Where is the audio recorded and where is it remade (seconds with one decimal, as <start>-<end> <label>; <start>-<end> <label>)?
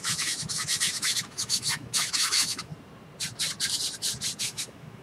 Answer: 0.0-2.7 remade; 2.7-4.4 recorded; 4.4-5.0 remade